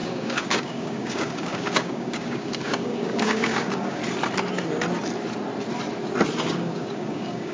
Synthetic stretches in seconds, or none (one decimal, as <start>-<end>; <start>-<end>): 0.0-4.0; 6.5-7.5